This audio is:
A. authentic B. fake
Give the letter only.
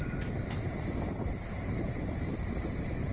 B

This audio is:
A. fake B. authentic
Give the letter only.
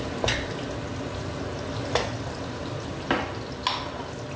B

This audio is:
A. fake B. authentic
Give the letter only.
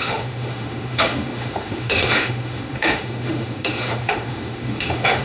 A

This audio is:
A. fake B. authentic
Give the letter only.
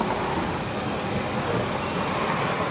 B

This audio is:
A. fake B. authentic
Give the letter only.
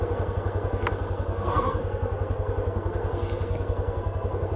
A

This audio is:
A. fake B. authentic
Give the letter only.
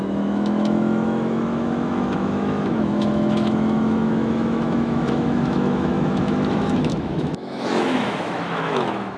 A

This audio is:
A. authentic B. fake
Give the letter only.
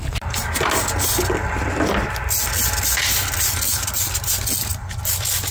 A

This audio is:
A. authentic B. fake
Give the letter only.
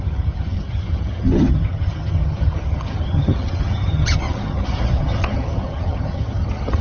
B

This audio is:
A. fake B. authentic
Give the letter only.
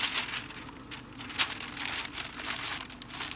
B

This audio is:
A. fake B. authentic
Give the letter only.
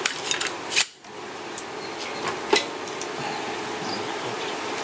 A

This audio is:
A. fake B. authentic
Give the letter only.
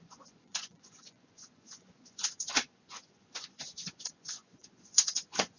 A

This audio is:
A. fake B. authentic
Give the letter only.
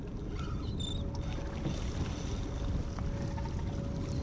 B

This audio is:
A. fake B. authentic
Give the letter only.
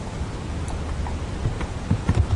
B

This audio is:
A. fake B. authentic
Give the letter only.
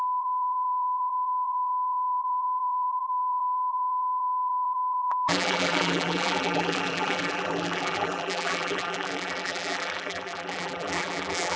A